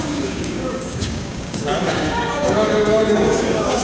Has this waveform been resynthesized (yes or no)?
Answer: yes